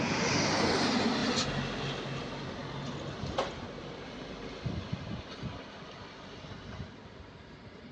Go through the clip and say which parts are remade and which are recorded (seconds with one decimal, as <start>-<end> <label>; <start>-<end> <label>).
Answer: 0.0-1.2 remade; 1.2-2.2 recorded; 2.2-2.6 remade; 2.6-3.2 recorded; 3.2-7.9 remade